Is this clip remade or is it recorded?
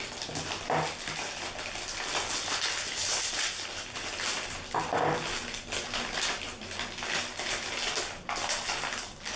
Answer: recorded